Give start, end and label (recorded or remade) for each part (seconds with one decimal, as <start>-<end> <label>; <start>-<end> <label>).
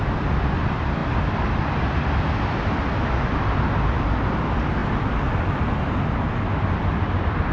0.0-7.5 recorded